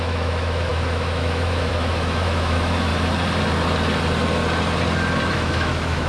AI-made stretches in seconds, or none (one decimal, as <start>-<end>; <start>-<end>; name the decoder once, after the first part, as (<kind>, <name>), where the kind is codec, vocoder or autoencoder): 0.0-2.9 (autoencoder, DAC-VAE); 5.3-6.1